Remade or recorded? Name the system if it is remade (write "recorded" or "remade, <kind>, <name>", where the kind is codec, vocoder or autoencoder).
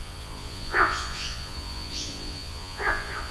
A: remade, vocoder, Vocos